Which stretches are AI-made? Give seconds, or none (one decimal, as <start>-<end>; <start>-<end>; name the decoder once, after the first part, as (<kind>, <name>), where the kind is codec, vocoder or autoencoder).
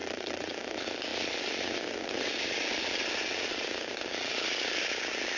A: 0.0-0.5 (vocoder, WaveNeXt)